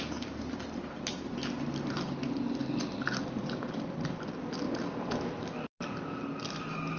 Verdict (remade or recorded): recorded